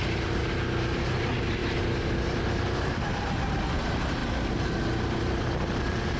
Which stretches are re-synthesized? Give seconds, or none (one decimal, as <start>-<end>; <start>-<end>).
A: none